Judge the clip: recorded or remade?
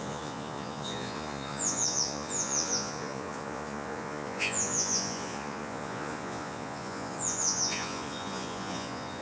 remade